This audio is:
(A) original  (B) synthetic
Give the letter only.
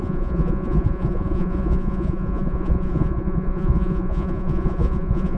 B